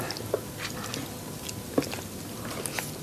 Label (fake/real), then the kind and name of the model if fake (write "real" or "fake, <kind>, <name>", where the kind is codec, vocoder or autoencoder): real